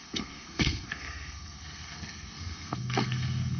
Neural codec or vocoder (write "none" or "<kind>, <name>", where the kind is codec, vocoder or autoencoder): codec, SNAC